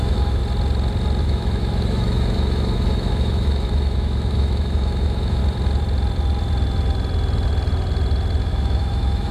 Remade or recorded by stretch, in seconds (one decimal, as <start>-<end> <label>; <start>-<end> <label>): 0.0-0.4 remade; 0.4-1.2 recorded; 1.2-5.4 remade; 5.4-8.4 recorded; 8.4-9.3 remade